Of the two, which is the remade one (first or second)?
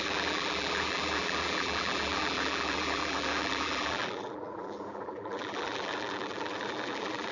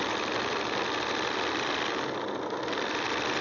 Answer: first